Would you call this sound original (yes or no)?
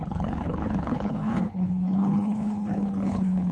no